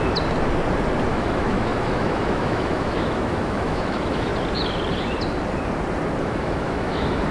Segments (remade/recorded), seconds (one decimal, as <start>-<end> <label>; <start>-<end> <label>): 0.0-1.1 recorded; 1.1-4.3 remade; 4.3-6.2 recorded; 6.2-7.3 remade